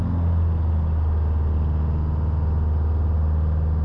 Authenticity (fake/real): real